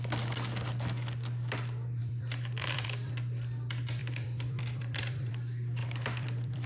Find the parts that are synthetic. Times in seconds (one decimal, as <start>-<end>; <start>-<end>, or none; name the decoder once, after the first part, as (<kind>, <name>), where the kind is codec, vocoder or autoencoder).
2.0-3.1 (vocoder, BigVGAN v2); 4.0-5.3; 5.8-6.7